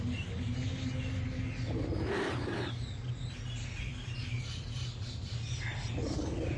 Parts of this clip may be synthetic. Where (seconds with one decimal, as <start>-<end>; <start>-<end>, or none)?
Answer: none